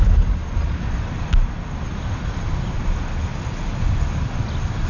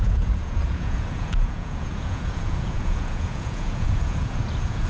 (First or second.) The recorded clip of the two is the first